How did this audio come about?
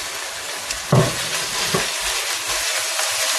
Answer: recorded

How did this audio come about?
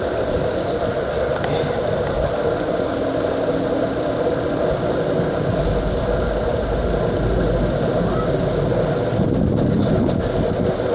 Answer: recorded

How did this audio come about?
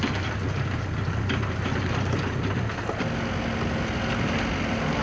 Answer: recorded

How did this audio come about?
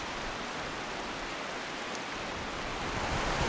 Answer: recorded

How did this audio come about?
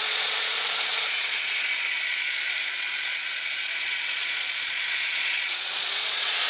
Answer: remade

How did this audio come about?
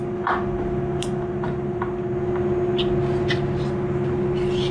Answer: recorded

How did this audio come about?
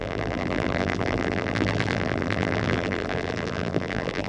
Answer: remade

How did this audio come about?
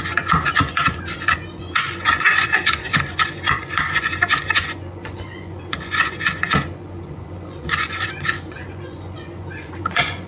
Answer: remade